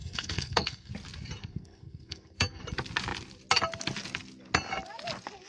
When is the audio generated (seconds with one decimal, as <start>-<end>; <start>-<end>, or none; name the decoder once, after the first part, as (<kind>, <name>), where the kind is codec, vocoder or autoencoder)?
0.0-0.9 (codec, SNAC); 1.4-2.6